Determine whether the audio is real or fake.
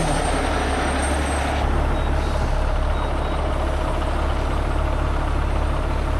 real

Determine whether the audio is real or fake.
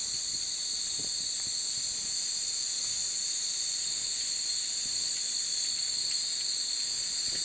real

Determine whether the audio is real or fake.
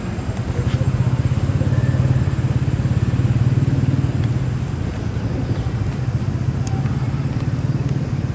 real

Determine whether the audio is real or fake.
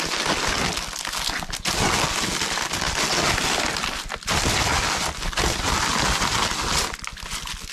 real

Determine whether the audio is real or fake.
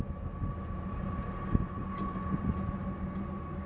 real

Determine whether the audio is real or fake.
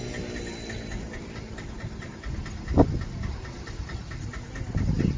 real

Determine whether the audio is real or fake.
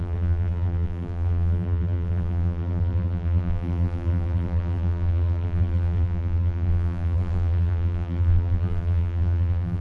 fake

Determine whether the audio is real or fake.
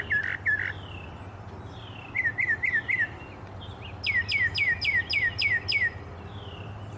real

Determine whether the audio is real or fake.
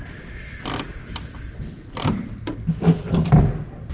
real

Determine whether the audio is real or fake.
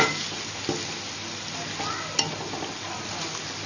real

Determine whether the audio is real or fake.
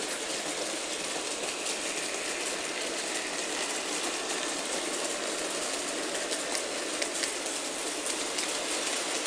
real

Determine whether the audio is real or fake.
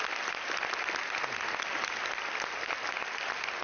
real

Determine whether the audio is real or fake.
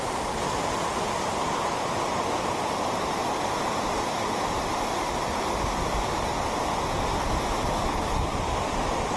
real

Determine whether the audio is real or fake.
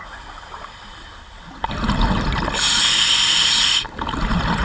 fake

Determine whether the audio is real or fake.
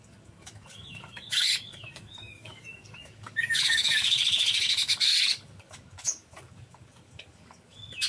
fake